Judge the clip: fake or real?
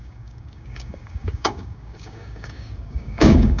fake